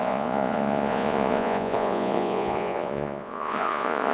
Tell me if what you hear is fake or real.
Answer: fake